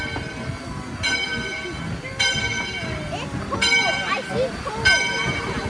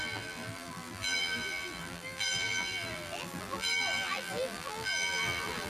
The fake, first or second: second